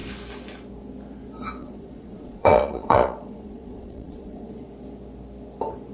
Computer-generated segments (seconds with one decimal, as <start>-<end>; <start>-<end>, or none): 1.6-4.7